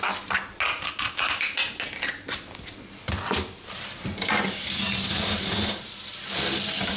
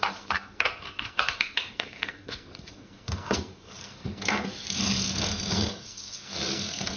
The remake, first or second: second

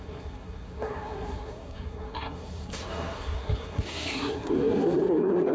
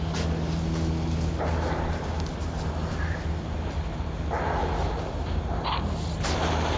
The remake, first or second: first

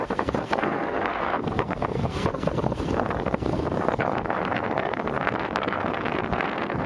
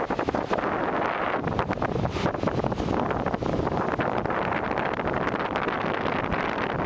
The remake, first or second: first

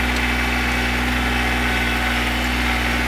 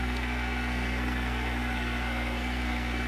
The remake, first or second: second